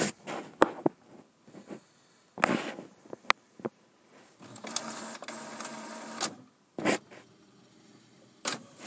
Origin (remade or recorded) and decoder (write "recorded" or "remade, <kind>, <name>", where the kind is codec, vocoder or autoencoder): recorded